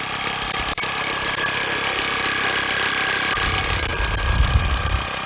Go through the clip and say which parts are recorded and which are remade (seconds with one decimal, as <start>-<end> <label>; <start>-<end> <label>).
0.0-5.3 recorded